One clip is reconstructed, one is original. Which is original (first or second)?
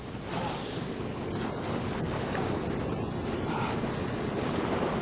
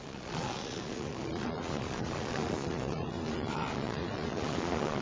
first